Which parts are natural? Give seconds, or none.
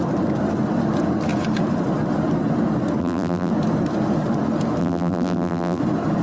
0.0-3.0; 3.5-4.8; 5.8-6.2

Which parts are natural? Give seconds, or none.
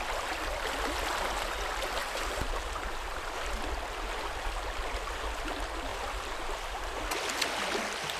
0.0-2.0; 3.3-5.9; 7.0-8.2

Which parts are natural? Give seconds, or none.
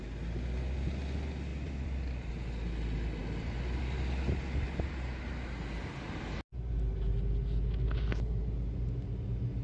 0.0-1.5; 2.3-9.6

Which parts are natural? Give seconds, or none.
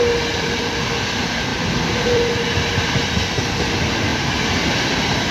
0.0-1.5; 2.8-5.3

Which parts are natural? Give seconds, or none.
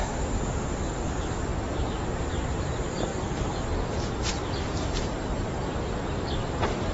1.5-2.2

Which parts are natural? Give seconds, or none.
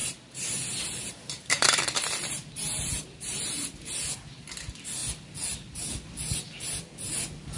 3.9-7.6